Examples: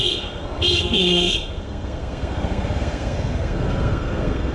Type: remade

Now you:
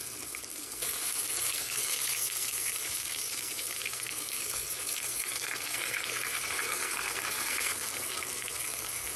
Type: remade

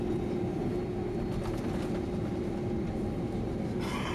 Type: recorded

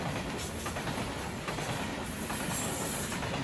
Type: recorded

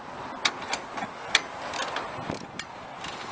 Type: recorded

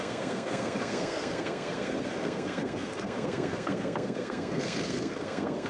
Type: remade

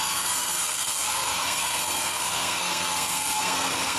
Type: remade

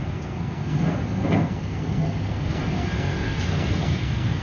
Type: remade